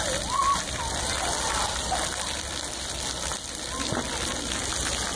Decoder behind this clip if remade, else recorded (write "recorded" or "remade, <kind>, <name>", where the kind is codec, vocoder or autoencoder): recorded